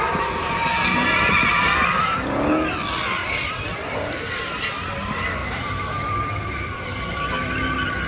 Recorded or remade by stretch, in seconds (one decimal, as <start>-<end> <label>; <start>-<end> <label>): 0.0-3.2 recorded; 3.2-3.9 remade; 3.9-5.4 recorded; 5.4-7.0 remade; 7.0-8.1 recorded